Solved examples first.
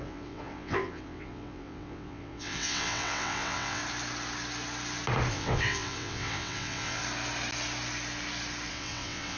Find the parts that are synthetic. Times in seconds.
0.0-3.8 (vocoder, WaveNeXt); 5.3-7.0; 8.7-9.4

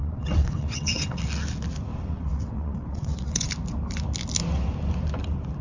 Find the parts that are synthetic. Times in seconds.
0.0-1.2 (vocoder, WaveNeXt); 1.9-3.5

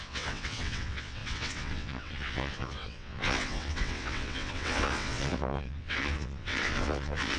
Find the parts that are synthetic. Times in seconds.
0.0-7.4 (vocoder, WaveNeXt)